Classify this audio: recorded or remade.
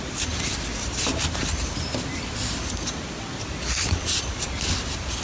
recorded